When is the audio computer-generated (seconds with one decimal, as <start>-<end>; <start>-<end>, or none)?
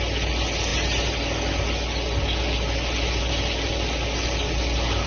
none